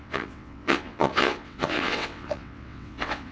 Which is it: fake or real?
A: fake